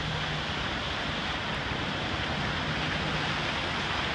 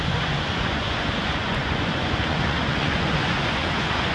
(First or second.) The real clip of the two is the first